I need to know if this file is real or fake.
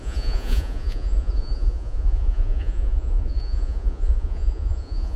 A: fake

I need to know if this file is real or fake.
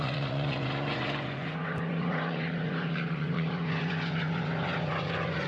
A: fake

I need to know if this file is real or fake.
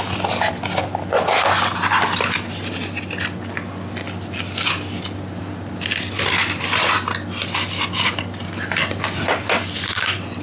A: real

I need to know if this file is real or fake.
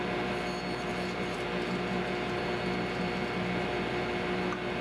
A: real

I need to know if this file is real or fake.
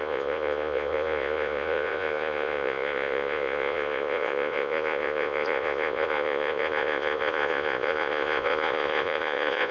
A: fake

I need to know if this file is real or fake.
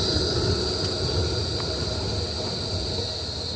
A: real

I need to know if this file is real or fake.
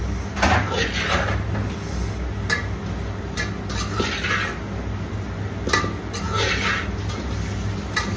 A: real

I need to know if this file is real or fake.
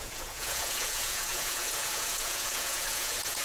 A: fake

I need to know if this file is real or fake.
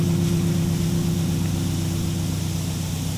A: real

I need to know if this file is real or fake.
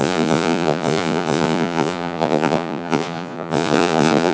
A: fake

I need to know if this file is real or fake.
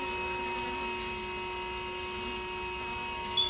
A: real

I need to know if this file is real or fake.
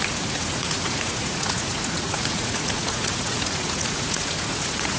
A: fake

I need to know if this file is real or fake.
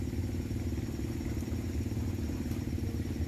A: real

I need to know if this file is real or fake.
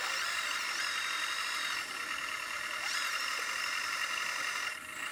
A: real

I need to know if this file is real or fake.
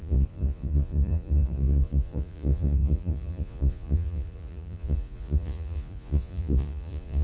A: fake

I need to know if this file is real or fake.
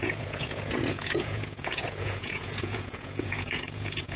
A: fake